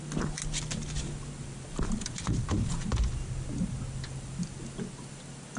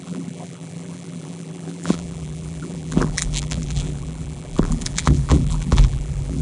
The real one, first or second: first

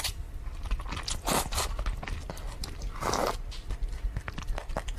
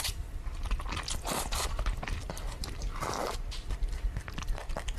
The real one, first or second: first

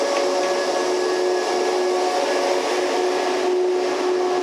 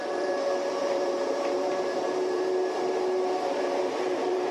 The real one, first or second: first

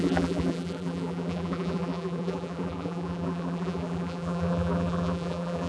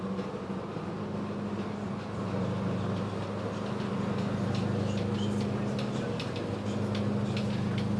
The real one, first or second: second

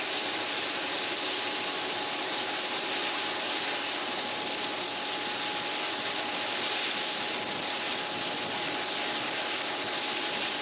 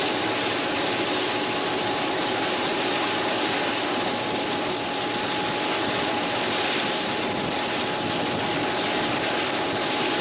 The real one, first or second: first